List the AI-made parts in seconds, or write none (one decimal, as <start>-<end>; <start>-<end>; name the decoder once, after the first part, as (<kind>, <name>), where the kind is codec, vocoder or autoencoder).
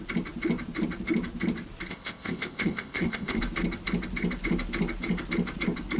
1.9-3.4 (codec, ZipCodec)